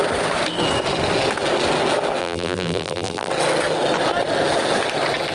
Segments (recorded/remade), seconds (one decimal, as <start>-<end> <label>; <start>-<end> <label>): 0.0-2.2 recorded; 2.2-3.3 remade; 3.3-5.3 recorded